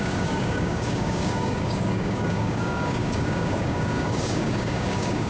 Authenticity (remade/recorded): remade